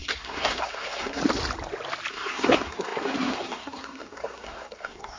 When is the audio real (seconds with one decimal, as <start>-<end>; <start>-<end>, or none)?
1.2-2.1